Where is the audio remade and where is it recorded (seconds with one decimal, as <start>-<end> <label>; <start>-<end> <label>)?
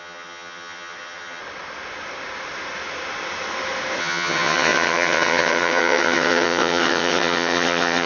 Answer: 0.0-1.4 remade; 1.4-4.0 recorded; 4.0-8.1 remade